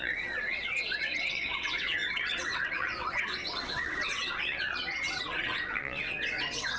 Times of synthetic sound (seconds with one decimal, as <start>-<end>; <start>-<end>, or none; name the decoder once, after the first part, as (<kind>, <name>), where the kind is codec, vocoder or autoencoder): 0.0-6.8 (vocoder, WaveNeXt)